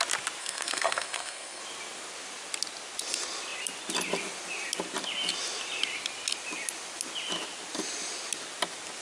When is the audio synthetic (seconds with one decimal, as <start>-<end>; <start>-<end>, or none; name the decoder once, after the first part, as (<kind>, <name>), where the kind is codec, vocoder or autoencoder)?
0.4-1.6 (codec, SNAC)